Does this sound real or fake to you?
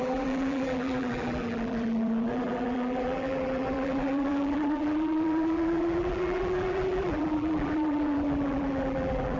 fake